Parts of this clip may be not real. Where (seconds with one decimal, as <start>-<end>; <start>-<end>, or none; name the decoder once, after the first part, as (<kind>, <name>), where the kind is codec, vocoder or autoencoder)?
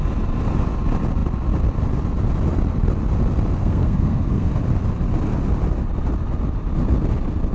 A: 3.6-4.5 (codec, SNAC)